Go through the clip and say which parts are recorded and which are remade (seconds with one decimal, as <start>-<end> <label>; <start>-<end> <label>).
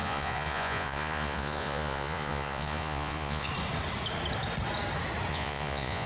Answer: 0.0-3.5 remade; 3.5-5.3 recorded; 5.3-6.1 remade